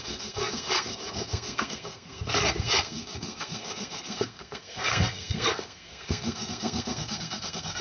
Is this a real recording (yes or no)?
no